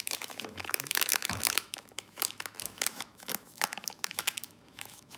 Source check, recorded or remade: remade